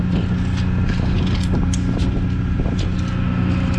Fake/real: real